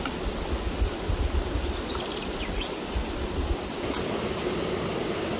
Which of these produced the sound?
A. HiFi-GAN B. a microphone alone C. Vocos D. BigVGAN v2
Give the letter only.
B